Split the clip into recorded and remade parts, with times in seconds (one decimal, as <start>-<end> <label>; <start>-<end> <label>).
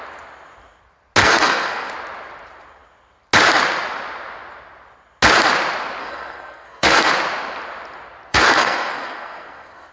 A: 0.0-1.2 recorded; 1.2-1.9 remade; 1.9-6.0 recorded; 6.0-7.1 remade; 7.1-8.3 recorded; 8.3-9.9 remade